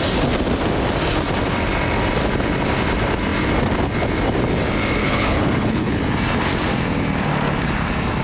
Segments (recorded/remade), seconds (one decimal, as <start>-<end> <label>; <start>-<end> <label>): 0.0-5.0 recorded; 5.0-6.0 remade; 6.0-8.2 recorded